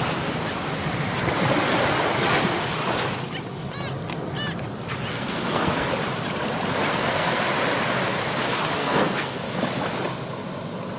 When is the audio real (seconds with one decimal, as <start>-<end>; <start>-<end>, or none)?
0.0-5.1; 5.9-6.9; 7.4-8.8; 9.4-11.0